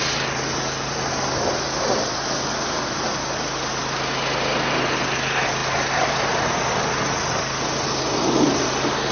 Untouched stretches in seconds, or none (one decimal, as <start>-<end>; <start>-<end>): 0.0-9.1